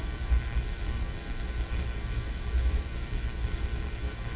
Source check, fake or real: fake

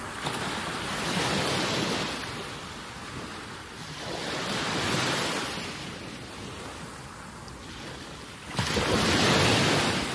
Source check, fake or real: real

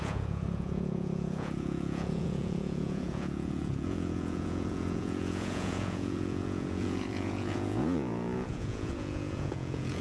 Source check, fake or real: fake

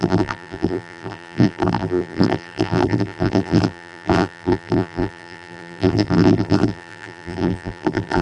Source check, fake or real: fake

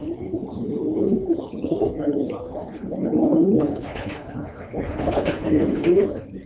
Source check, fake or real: fake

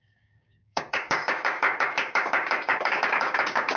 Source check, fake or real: fake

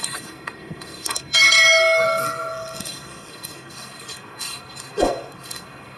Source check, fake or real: fake